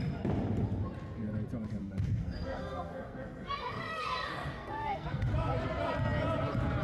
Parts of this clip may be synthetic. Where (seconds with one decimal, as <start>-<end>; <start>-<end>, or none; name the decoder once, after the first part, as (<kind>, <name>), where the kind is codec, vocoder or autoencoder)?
1.8-5.3 (codec, SNAC)